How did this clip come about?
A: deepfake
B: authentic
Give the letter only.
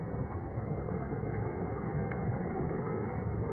A